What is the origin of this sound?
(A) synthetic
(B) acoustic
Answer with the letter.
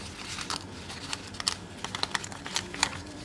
B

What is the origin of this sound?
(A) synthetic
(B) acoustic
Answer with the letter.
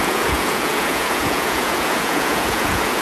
A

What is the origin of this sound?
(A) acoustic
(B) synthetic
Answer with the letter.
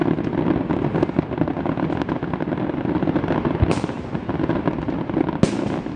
A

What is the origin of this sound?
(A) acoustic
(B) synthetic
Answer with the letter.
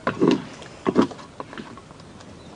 A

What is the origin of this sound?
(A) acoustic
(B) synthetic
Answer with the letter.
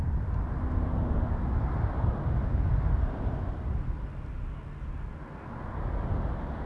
A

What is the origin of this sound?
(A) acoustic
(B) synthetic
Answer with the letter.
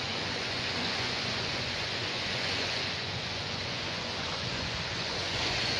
B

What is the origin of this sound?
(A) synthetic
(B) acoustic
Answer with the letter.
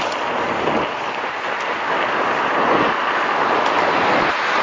B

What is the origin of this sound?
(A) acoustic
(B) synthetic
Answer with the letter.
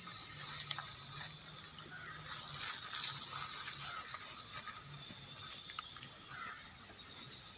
A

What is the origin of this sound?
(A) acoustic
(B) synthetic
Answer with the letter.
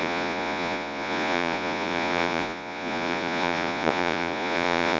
B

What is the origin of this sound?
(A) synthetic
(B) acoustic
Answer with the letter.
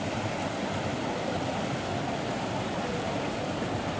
B